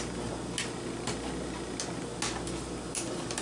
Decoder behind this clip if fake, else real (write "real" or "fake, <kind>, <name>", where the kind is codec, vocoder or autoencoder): real